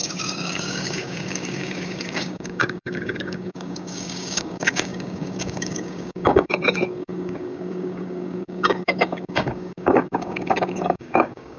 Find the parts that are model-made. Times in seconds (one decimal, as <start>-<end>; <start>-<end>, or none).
0.0-11.6